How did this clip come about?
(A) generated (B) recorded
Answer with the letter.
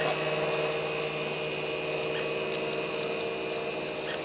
B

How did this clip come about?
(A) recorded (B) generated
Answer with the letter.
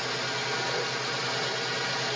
A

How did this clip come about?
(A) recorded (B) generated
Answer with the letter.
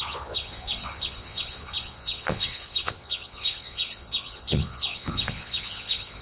B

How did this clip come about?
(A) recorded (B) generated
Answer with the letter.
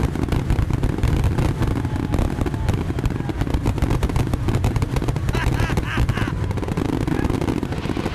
A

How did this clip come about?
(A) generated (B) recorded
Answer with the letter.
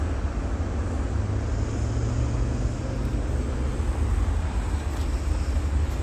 B